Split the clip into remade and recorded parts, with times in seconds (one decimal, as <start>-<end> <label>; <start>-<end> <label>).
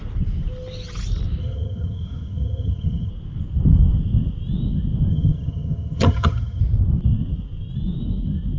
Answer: 0.0-1.4 recorded; 1.4-3.1 remade; 3.1-5.1 recorded; 5.1-6.6 remade; 6.6-8.6 recorded